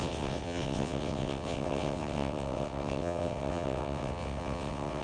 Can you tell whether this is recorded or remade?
remade